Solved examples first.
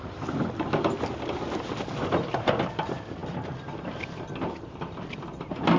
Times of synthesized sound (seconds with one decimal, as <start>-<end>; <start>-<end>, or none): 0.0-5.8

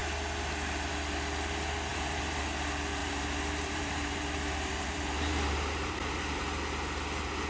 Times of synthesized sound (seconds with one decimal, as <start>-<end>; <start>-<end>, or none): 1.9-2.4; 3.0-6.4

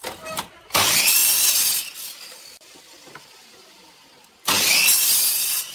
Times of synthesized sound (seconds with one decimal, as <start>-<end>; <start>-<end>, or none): none

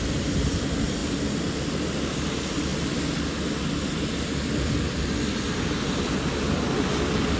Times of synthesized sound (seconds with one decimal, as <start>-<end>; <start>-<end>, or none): none